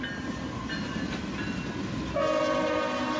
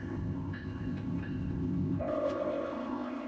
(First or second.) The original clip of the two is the first